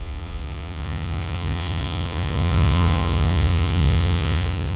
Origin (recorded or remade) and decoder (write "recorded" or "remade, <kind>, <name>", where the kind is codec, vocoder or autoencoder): remade, vocoder, Vocos